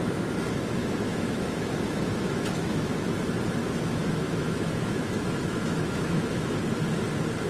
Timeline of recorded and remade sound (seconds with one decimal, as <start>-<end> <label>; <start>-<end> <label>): 0.0-0.8 recorded; 0.8-3.1 remade; 3.1-3.6 recorded; 3.6-6.5 remade; 6.5-7.5 recorded